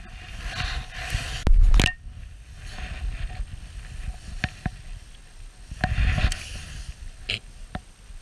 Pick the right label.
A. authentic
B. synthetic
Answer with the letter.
A